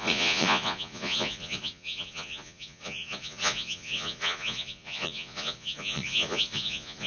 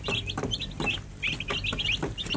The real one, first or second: second